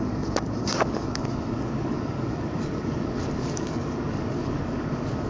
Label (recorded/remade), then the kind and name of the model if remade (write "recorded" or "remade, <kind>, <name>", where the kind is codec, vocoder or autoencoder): remade, codec, DAC